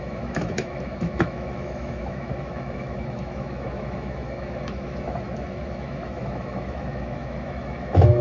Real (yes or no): no